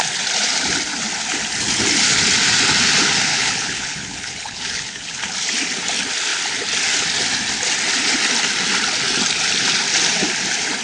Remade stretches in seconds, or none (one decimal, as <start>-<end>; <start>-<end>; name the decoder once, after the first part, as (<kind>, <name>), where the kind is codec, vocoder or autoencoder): 3.3-5.3 (codec, HILCodec)